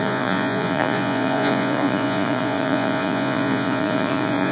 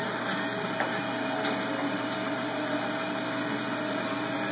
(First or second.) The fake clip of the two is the first